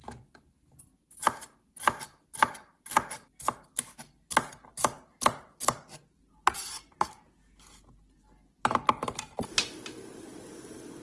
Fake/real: real